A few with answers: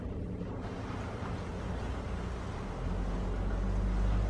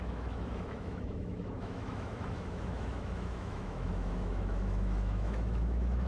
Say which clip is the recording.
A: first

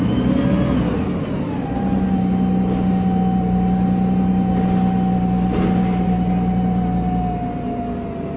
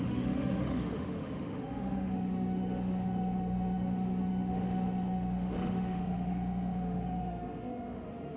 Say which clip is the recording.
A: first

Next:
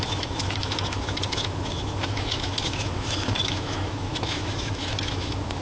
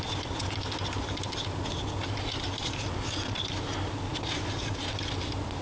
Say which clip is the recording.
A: second